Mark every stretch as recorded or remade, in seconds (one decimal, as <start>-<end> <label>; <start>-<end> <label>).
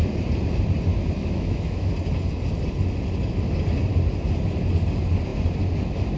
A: 0.0-1.2 recorded; 1.2-1.9 remade; 1.9-6.2 recorded